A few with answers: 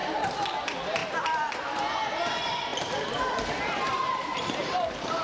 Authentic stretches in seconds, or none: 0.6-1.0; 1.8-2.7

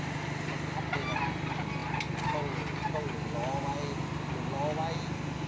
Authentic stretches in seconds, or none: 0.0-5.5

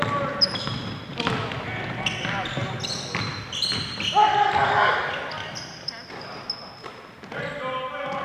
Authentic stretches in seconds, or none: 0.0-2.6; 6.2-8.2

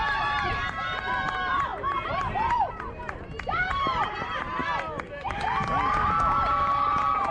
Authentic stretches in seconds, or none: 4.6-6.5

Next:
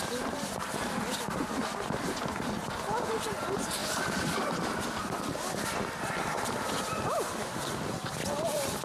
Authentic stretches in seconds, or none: none

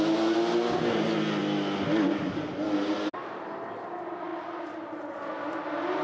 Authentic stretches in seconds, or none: 0.0-4.3; 5.0-6.0

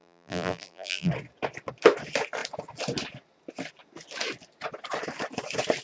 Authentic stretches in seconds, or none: 1.1-5.8

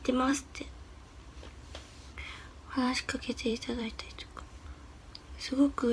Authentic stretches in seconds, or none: none